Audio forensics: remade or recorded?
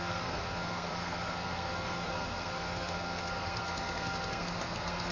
remade